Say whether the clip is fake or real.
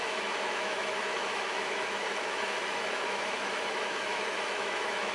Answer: fake